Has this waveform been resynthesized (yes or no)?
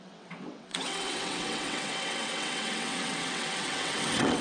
yes